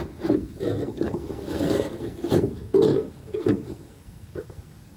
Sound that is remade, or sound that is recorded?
remade